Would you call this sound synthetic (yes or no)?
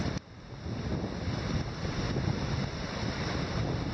no